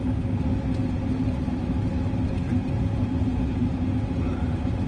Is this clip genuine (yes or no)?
yes